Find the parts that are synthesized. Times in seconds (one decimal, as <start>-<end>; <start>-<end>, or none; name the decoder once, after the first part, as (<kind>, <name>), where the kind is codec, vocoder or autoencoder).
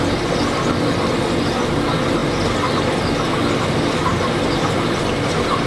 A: none